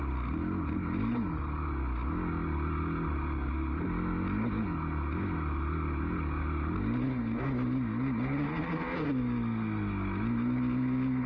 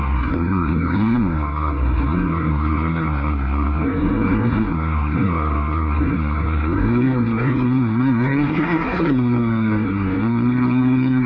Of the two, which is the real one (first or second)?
first